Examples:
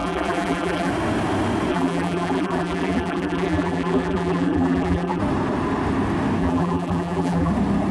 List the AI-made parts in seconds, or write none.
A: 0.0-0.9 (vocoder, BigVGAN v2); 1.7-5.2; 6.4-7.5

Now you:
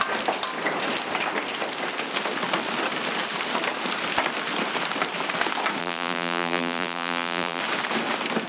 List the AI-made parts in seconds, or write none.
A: 5.8-7.6 (vocoder, BigVGAN v2)